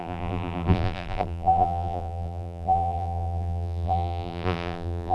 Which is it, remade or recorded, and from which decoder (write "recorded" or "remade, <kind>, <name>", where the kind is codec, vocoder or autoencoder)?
remade, vocoder, BigVGAN v2